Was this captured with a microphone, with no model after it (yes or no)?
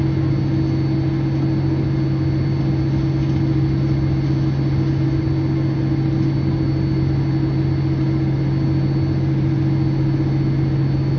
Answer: yes